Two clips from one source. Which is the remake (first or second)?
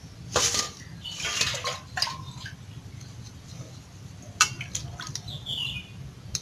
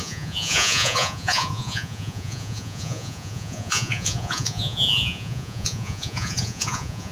second